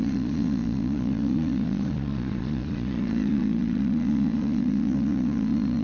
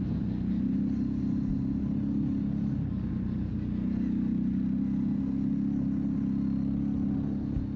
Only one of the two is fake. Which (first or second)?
first